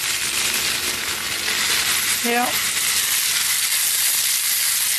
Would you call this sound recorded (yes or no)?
yes